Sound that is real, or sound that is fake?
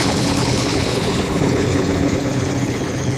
fake